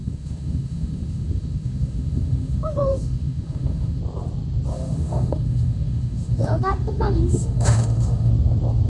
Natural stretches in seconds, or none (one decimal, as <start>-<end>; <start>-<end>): 4.0-4.7; 8.3-8.9